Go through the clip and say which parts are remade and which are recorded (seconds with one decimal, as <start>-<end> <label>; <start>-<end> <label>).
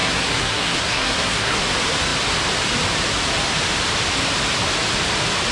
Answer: 0.0-1.6 remade; 1.6-5.5 recorded